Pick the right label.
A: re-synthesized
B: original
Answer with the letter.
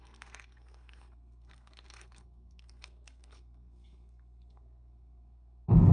A